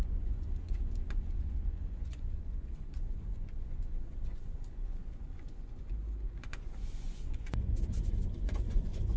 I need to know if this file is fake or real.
fake